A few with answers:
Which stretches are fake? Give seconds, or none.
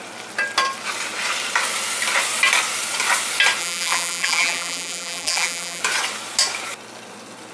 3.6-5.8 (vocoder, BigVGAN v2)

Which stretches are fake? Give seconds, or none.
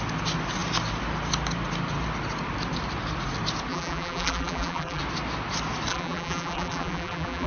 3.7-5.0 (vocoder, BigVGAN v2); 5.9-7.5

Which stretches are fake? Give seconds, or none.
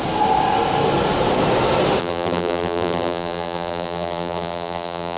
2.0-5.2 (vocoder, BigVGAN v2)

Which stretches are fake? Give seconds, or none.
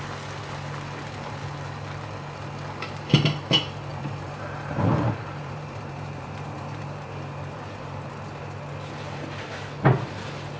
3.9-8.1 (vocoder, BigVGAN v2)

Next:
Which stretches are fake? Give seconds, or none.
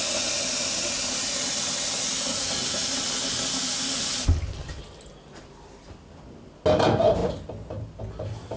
none